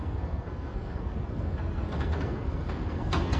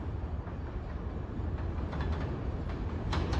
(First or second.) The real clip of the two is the second